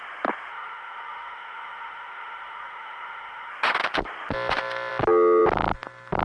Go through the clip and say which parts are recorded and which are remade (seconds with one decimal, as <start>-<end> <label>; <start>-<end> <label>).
0.0-0.5 recorded; 0.5-3.5 remade; 3.5-6.2 recorded